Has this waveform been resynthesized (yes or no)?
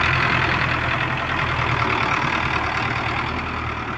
no